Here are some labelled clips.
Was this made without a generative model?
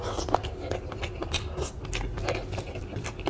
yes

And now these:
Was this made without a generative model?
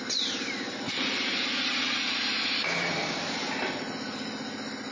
yes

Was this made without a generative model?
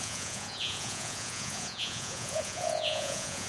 no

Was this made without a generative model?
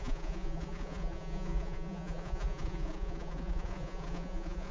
no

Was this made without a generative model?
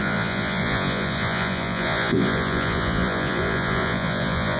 no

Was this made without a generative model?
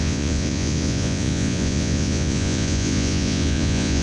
no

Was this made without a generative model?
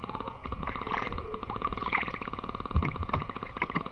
no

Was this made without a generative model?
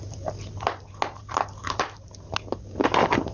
yes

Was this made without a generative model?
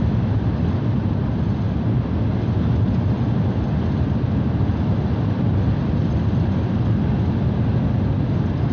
yes